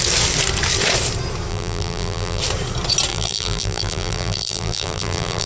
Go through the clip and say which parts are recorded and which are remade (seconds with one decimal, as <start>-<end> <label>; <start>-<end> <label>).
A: 0.0-1.5 recorded; 1.5-2.4 remade; 2.4-3.1 recorded; 3.1-5.5 remade